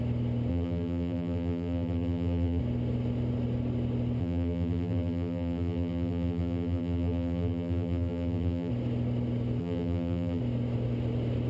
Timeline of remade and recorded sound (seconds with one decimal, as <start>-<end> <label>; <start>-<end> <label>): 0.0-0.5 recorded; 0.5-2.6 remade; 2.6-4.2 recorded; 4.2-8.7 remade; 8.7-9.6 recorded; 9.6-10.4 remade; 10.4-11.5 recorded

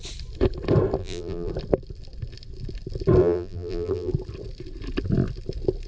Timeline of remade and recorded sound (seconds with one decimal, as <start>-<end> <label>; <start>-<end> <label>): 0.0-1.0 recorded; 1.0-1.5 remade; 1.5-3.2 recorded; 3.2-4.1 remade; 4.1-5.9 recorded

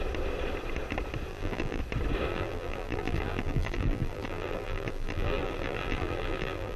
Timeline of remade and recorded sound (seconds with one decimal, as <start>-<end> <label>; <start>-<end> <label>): 0.0-1.3 recorded; 1.3-1.8 remade; 1.8-2.3 recorded; 2.3-6.8 remade

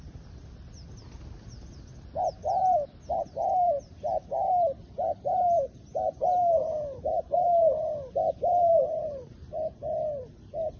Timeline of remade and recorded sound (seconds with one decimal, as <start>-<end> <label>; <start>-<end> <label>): 0.0-10.8 remade

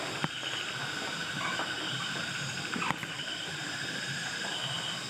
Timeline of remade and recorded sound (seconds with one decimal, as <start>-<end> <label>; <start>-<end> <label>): 0.0-1.2 recorded; 1.2-4.3 remade; 4.3-5.1 recorded

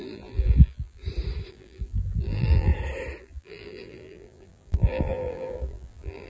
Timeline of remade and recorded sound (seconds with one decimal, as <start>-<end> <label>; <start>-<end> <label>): 0.0-1.0 remade; 1.0-1.5 recorded; 1.5-2.7 remade; 2.7-3.2 recorded; 3.2-6.3 remade

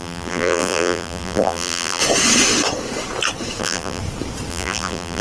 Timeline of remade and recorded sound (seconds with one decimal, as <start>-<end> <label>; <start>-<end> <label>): 0.0-2.0 remade; 2.0-3.6 recorded; 3.6-4.0 remade; 4.0-4.5 recorded; 4.5-5.2 remade

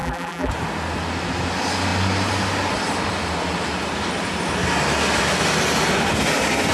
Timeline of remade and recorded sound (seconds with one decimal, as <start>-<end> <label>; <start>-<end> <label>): 0.0-0.5 remade; 0.5-6.7 recorded